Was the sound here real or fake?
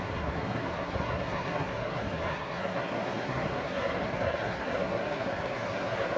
fake